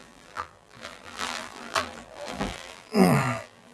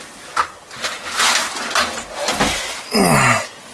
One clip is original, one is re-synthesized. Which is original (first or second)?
second